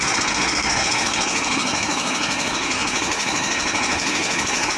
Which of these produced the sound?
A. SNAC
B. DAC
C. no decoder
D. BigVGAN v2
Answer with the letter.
A